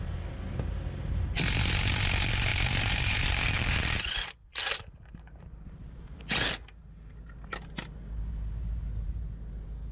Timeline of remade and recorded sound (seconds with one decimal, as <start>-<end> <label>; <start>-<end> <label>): 0.0-2.5 recorded; 2.5-6.2 remade; 6.2-9.9 recorded

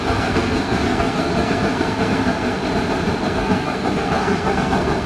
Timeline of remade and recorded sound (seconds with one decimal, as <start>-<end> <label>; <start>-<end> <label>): 0.0-2.6 remade; 2.6-3.2 recorded; 3.2-5.1 remade